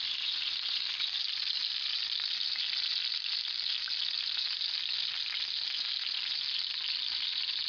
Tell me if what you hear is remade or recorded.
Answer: recorded